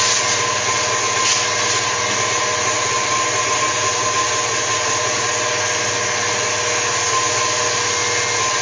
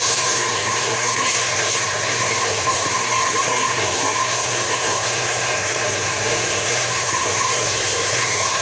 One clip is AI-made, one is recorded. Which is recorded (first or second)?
first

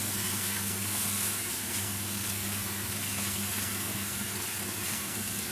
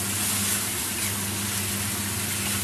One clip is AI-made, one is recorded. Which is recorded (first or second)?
second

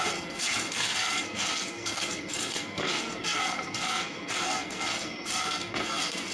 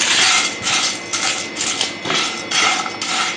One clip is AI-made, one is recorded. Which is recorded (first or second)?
second